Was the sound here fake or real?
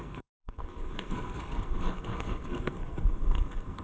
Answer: fake